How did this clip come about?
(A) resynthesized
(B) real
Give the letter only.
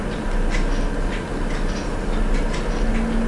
B